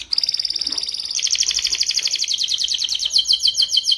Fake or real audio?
real